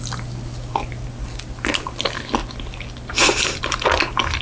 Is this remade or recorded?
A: recorded